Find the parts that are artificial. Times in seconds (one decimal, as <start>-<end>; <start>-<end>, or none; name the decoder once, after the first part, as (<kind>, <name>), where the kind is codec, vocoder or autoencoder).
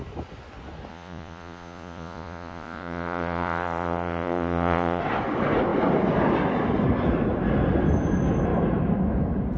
0.9-5.0 (vocoder, Vocos)